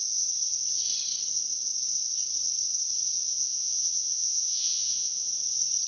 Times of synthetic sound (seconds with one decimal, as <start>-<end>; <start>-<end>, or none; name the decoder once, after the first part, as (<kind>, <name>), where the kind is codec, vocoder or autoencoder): 3.3-5.3 (vocoder, Vocos)